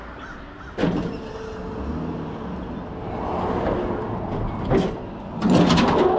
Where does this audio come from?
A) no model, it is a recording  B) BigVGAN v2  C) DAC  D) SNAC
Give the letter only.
A